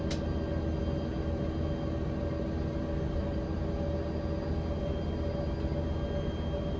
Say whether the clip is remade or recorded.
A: recorded